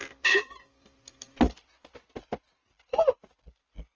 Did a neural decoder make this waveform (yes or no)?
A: no